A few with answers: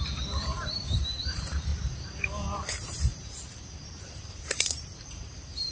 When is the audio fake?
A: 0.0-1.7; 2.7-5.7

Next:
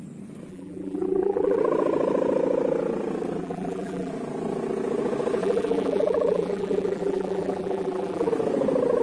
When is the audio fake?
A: 0.5-1.6; 3.4-4.1; 5.4-8.3

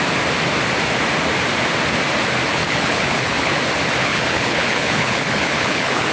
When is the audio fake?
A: 2.5-3.6; 4.0-6.1

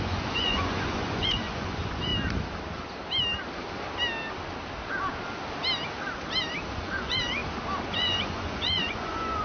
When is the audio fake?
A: 0.0-2.1; 6.8-7.4; 7.9-9.4

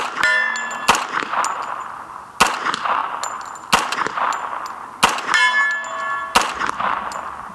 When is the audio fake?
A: none